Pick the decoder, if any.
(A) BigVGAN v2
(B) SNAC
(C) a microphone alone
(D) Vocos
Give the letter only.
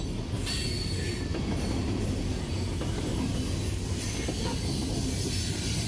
C